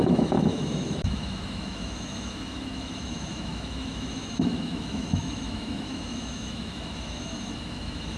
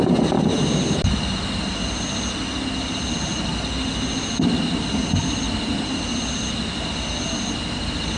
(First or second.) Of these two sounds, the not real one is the first